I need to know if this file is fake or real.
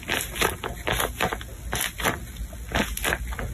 real